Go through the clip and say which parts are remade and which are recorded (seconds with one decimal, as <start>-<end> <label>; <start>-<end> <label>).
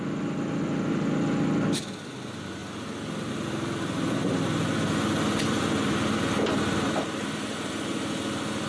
0.0-8.7 recorded